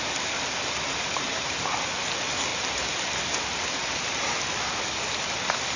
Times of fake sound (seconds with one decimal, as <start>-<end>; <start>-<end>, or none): none